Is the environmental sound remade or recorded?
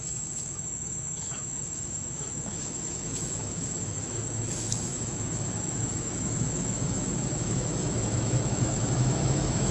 remade